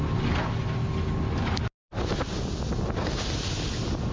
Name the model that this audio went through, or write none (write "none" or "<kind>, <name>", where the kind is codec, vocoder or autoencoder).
none